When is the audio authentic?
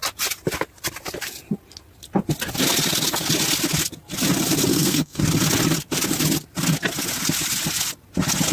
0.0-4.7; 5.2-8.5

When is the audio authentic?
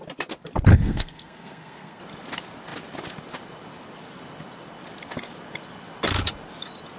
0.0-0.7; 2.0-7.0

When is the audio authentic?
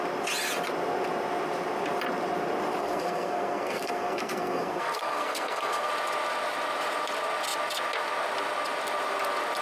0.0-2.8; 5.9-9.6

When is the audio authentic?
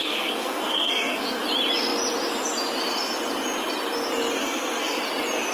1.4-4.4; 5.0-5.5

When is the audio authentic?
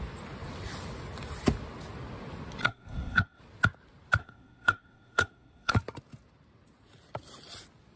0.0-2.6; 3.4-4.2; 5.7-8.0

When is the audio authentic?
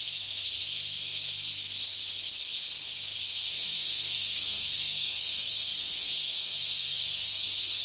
none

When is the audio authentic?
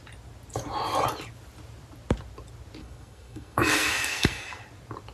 0.0-2.8; 4.6-5.1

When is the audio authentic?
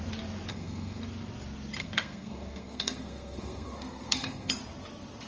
0.0-0.5; 1.0-1.8; 4.5-5.3